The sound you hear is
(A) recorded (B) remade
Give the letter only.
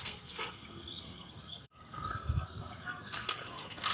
B